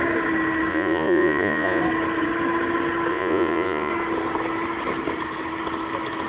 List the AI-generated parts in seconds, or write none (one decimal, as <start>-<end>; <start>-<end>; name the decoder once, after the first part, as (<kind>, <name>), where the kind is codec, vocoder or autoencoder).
0.7-1.8 (vocoder, Vocos); 3.1-3.9